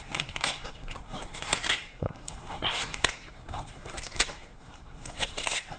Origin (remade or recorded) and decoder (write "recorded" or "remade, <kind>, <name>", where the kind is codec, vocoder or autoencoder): remade, codec, SNAC